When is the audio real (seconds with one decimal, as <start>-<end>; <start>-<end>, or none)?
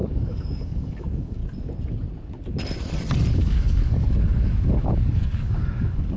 1.4-3.3